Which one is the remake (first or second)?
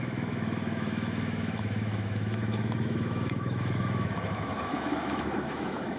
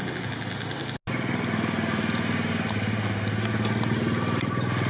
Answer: first